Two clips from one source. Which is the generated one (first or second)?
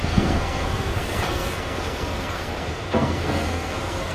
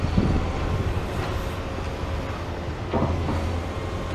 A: first